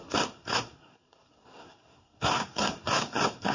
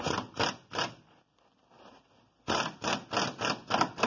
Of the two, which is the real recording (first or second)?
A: second